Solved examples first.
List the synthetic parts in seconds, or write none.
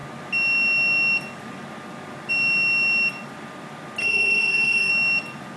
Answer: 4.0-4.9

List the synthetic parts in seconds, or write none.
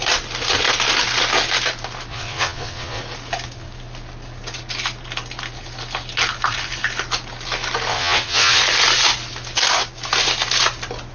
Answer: 2.1-3.0; 7.9-8.6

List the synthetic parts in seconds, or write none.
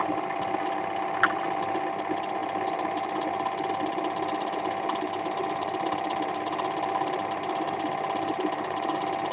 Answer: none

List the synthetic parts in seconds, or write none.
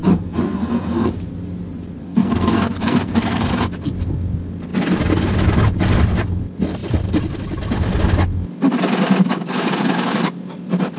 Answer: 0.0-1.1; 2.0-3.5